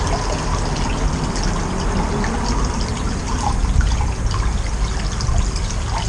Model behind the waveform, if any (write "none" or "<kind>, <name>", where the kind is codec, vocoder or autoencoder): none